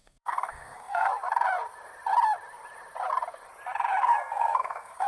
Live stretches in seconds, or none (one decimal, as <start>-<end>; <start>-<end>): 1.1-4.0